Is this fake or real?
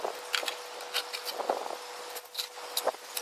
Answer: real